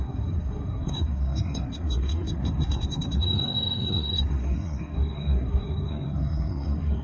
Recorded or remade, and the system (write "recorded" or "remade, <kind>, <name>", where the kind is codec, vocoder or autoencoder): remade, codec, SNAC